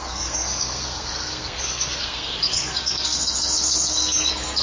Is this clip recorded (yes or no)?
no